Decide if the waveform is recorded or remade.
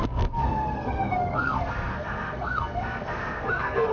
remade